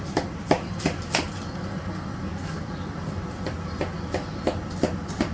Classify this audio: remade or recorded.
recorded